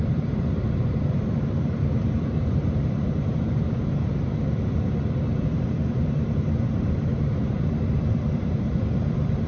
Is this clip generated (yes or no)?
yes